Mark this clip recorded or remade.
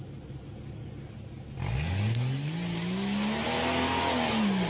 recorded